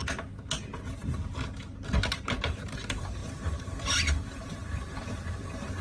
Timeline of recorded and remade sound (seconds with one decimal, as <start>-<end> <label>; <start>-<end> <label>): 0.0-0.9 recorded; 0.9-5.8 remade